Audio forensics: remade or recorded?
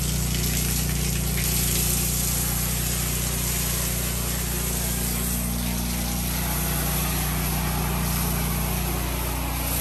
recorded